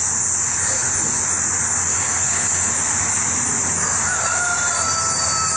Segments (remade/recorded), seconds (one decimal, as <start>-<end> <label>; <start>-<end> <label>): 0.0-1.9 recorded; 1.9-2.7 remade; 2.7-5.6 recorded